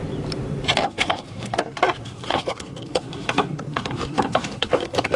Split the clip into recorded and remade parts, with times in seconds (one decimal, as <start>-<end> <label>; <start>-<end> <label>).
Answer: 0.0-0.8 recorded; 0.8-1.6 remade; 1.6-2.0 recorded; 2.0-5.2 remade